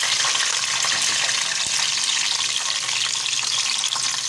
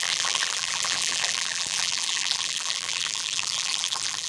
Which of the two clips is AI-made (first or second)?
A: second